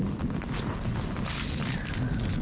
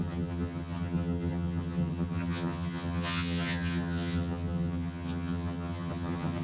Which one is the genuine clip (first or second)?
first